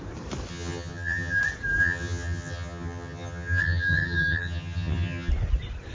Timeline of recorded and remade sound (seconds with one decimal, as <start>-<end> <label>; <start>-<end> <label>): 0.0-0.5 recorded; 0.5-1.4 remade; 1.4-1.8 recorded; 1.8-5.3 remade; 5.3-5.9 recorded